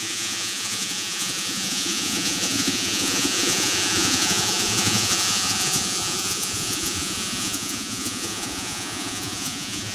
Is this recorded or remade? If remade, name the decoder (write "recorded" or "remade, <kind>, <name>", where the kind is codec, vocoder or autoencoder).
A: remade, vocoder, Vocos